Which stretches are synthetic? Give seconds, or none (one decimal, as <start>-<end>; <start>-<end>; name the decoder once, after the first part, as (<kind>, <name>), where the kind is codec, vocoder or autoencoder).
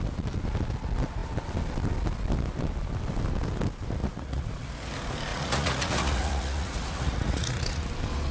4.0-4.7 (vocoder, Vocos); 5.3-7.8